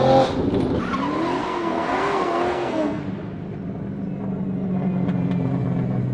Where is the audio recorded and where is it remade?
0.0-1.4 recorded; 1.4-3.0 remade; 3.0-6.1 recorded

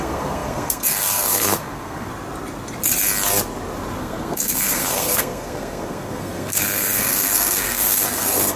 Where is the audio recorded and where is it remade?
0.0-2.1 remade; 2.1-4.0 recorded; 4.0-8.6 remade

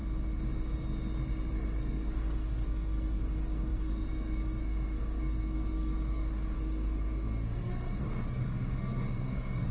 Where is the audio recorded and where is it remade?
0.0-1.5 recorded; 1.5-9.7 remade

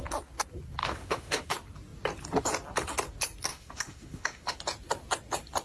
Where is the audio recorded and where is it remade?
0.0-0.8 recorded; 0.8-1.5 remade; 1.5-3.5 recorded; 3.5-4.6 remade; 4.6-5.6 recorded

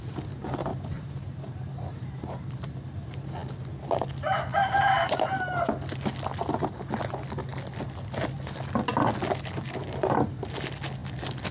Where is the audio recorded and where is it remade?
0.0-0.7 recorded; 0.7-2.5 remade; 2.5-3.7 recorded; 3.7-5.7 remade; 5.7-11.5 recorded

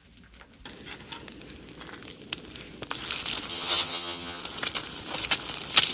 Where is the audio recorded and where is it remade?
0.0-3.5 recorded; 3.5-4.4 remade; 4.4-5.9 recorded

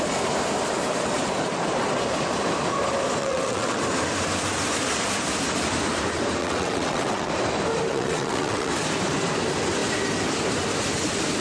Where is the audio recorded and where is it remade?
0.0-3.2 recorded; 3.2-3.8 remade; 3.8-6.4 recorded; 6.4-7.3 remade; 7.3-7.9 recorded; 7.9-8.7 remade; 8.7-11.4 recorded

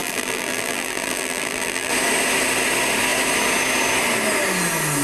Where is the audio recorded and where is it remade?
0.0-1.9 remade; 1.9-5.0 recorded